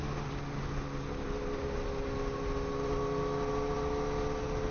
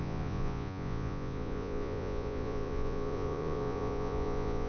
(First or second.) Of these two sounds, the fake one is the second